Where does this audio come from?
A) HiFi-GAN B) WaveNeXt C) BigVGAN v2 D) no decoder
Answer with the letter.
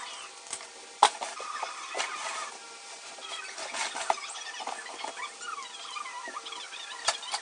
D